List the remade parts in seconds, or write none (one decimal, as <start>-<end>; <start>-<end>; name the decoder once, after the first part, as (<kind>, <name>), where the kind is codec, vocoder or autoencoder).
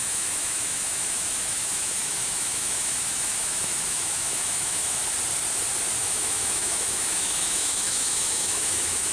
0.0-5.0 (autoencoder, DAC-VAE); 6.0-9.1